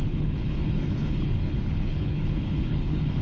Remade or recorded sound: remade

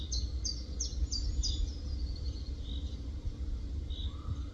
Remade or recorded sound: recorded